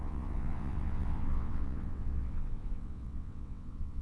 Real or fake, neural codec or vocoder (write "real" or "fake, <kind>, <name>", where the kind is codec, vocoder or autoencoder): fake, vocoder, WaveNeXt